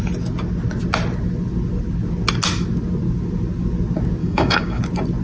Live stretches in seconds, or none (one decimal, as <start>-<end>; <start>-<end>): 0.0-4.2; 4.8-5.2